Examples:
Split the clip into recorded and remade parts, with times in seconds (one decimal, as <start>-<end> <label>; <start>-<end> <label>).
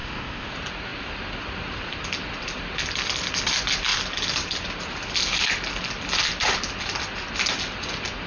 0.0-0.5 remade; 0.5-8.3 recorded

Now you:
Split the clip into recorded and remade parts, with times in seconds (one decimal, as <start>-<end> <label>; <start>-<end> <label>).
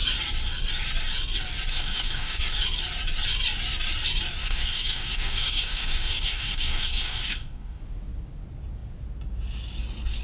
0.0-1.7 recorded; 1.7-2.4 remade; 2.4-4.4 recorded; 4.4-7.8 remade; 7.8-10.2 recorded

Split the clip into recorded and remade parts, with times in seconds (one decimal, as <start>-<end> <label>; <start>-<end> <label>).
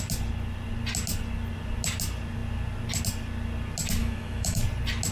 0.0-4.0 recorded; 4.0-4.6 remade; 4.6-5.1 recorded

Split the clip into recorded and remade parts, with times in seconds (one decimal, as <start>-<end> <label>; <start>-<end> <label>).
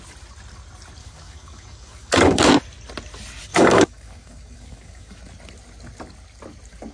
0.0-1.0 recorded; 1.0-2.5 remade; 2.5-3.5 recorded; 3.5-5.2 remade; 5.2-6.9 recorded